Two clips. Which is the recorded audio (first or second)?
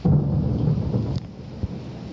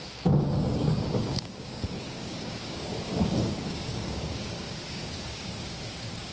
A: first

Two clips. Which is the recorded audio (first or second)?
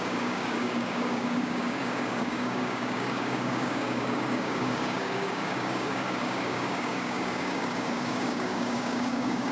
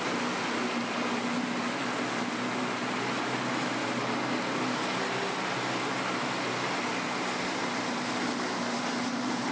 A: second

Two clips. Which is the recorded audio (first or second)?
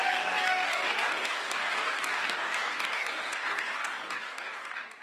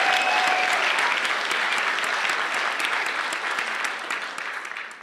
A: second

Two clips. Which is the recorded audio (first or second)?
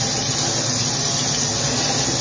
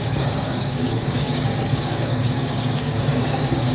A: first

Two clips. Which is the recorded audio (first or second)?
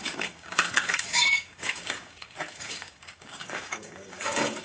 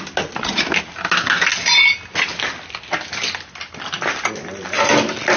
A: second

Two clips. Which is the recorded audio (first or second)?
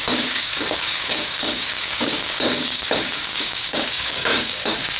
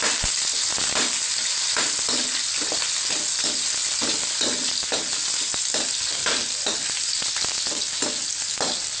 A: second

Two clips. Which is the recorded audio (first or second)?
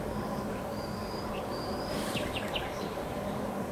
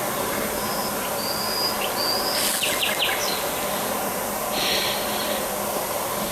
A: second